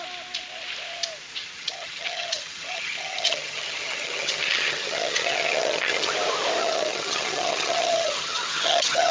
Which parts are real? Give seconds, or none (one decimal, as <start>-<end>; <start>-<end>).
0.0-1.4; 6.1-6.6